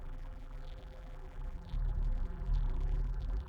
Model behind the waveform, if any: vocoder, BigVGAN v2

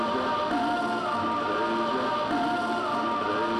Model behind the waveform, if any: none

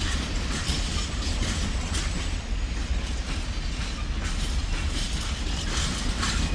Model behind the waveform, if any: none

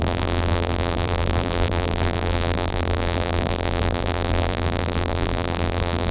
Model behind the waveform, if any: vocoder, BigVGAN v2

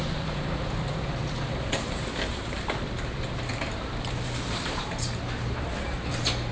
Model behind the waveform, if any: vocoder, BigVGAN v2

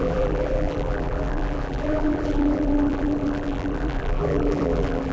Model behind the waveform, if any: vocoder, BigVGAN v2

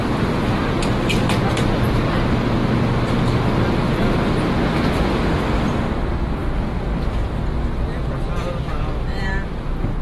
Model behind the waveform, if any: none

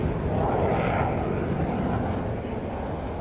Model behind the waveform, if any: none